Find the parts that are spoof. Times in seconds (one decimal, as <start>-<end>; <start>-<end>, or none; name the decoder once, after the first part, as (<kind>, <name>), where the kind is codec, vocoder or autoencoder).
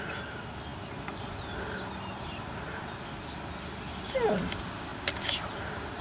none